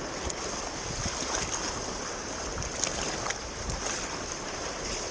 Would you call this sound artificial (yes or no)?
no